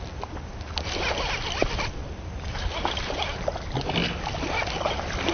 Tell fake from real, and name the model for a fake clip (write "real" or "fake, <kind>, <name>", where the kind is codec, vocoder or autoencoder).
real